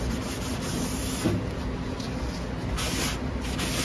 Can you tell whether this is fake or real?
real